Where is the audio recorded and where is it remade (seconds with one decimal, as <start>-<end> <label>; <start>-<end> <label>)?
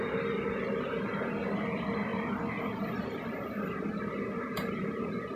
0.0-2.1 recorded; 2.1-2.8 remade; 2.8-5.4 recorded